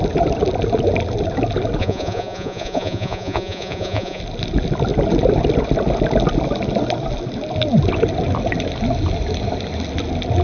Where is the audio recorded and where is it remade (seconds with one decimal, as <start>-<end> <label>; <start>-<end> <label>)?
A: 0.0-1.8 recorded; 1.8-4.2 remade; 4.2-10.4 recorded